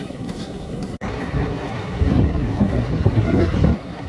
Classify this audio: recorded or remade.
remade